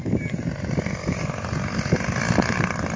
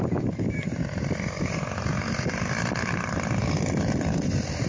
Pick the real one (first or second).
first